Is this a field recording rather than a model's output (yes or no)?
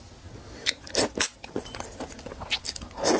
yes